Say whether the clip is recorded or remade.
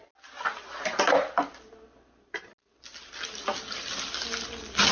recorded